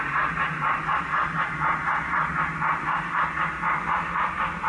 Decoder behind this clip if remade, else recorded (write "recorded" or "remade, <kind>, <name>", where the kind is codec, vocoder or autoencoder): recorded